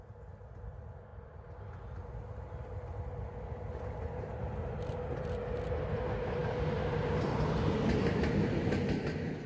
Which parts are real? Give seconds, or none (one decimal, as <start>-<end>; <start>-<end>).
0.0-9.5